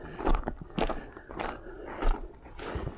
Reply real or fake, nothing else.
real